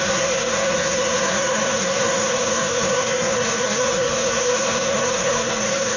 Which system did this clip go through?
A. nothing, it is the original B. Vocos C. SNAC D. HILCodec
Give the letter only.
C